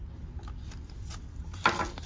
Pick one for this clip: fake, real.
real